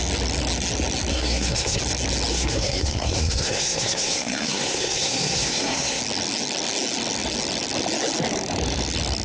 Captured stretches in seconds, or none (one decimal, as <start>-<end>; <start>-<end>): 0.0-1.1; 1.8-2.3; 6.0-9.2